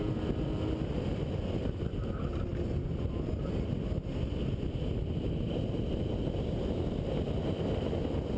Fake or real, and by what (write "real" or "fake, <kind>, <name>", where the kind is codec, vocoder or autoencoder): real